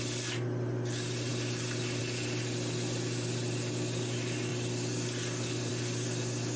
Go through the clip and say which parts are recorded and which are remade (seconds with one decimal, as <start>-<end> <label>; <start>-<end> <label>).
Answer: 0.0-6.6 recorded